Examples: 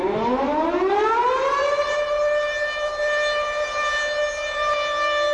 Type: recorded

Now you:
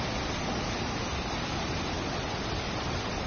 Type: recorded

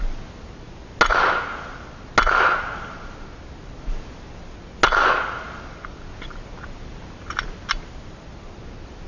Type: recorded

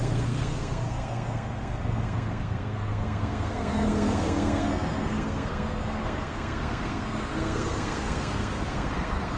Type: remade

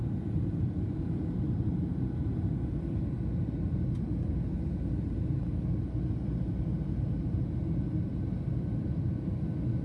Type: recorded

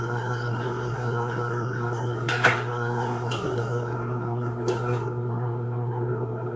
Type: remade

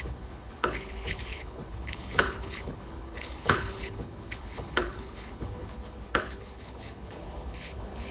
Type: remade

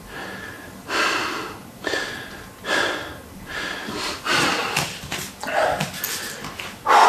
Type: recorded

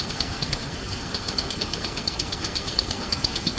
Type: remade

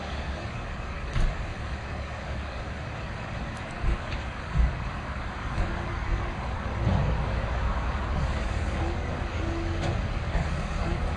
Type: remade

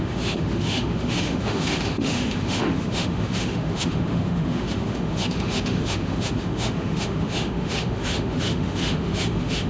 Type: remade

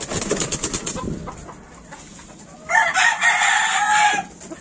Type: recorded